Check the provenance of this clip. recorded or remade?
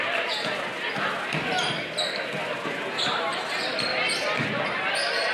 recorded